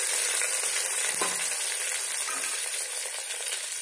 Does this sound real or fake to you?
real